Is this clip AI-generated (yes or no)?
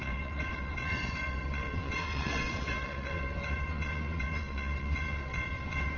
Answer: yes